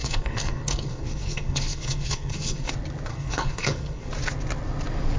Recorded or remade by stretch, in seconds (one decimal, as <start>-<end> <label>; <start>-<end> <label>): 0.0-2.7 remade; 2.7-3.1 recorded; 3.1-4.1 remade; 4.1-5.2 recorded